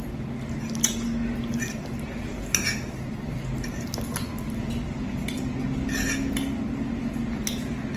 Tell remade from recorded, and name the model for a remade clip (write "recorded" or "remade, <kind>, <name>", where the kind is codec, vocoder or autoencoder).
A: recorded